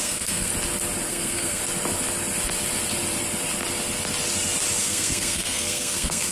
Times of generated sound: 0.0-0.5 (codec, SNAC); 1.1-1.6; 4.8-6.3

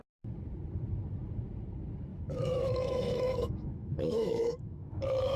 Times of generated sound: 2.1-5.4 (autoencoder, DAC-VAE)

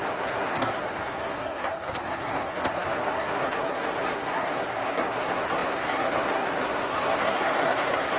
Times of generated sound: 0.0-8.2 (codec, SNAC)

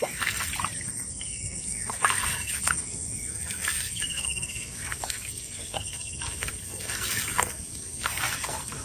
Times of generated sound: 0.0-0.5 (codec, SNAC); 1.1-8.8